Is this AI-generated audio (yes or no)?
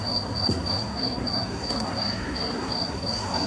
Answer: yes